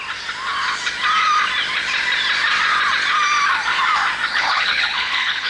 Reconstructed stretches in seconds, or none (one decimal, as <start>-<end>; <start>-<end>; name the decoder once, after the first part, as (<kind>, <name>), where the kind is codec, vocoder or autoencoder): 4.3-5.5 (codec, HILCodec)